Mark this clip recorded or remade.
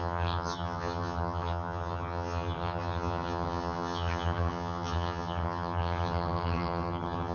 remade